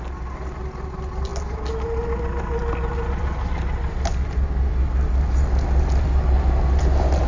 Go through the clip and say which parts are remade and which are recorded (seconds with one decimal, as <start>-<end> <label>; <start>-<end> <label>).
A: 0.0-7.3 recorded